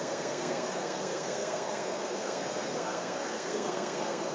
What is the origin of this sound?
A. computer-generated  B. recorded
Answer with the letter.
A